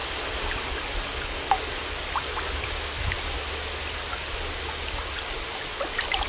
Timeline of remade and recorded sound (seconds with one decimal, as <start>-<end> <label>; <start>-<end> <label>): 0.0-6.3 recorded